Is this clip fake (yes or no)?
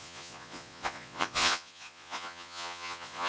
yes